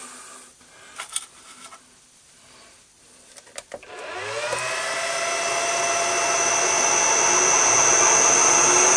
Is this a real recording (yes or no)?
yes